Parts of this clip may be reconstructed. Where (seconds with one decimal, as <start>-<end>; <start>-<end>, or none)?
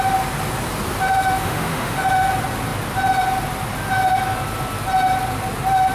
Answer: 1.2-2.3